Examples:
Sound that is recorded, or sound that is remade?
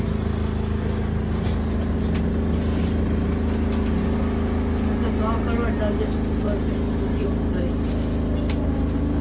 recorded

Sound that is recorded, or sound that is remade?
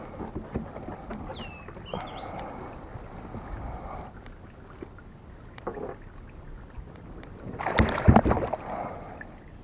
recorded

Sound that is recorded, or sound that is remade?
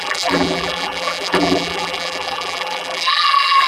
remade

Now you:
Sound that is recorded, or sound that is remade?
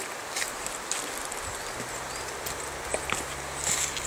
recorded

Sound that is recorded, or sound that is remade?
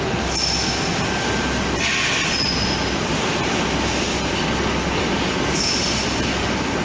recorded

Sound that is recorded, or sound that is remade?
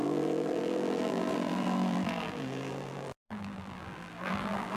remade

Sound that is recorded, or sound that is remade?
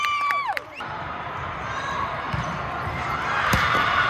remade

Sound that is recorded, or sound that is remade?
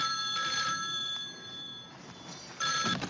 remade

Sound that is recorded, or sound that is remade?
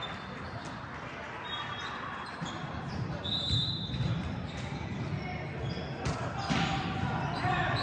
remade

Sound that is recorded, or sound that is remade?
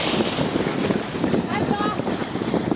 remade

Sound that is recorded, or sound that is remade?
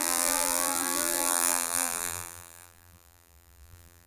remade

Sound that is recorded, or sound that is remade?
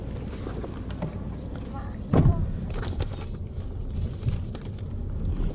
remade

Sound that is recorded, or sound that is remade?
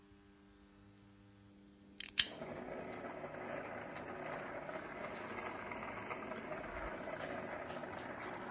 recorded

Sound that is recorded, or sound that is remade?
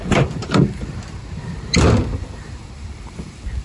remade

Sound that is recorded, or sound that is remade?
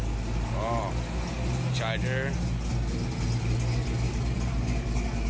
recorded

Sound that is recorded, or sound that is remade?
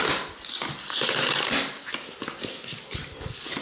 recorded